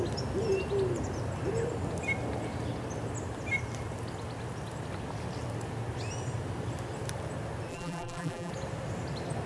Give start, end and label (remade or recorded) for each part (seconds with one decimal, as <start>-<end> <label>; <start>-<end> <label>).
0.0-7.7 recorded; 7.7-8.5 remade; 8.5-9.5 recorded